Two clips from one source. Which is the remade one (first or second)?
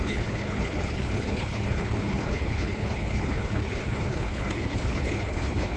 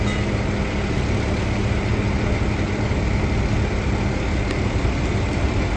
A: first